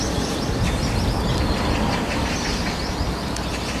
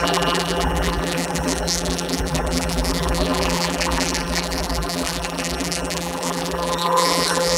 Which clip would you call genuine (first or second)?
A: first